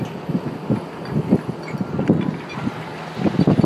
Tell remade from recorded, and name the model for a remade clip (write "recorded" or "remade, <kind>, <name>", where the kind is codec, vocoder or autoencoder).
recorded